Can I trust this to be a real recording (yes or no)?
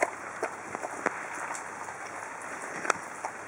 yes